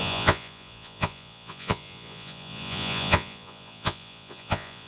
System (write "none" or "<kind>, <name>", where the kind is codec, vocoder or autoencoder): vocoder, Vocos